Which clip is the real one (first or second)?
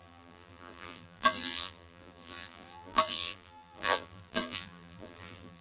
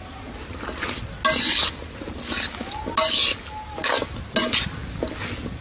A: second